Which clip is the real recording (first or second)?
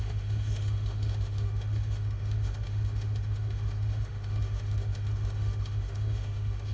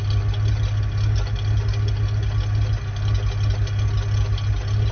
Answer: second